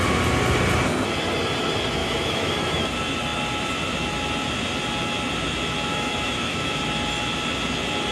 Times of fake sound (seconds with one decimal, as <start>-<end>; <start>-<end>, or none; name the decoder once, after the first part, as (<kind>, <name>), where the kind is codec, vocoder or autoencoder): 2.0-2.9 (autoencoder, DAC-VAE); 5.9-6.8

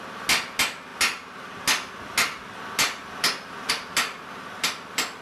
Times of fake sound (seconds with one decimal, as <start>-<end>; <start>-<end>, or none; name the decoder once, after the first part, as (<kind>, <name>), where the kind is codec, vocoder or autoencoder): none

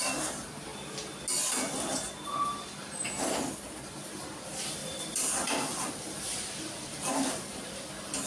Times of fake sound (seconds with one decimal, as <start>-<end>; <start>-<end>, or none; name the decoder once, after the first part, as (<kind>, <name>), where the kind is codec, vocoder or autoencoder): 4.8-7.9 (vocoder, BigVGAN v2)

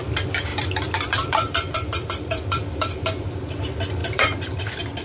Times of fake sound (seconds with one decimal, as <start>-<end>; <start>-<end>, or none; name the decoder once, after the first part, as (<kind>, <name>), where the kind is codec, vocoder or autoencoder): 0.5-3.5 (vocoder, BigVGAN v2); 4.0-4.6

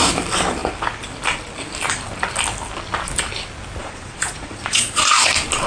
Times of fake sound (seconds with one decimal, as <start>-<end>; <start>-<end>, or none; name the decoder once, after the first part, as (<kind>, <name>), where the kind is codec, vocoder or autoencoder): 3.8-5.3 (vocoder, Vocos)

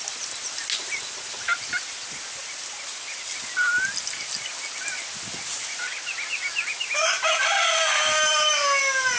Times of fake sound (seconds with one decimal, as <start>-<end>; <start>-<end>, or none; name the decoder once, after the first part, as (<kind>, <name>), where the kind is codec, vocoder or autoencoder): none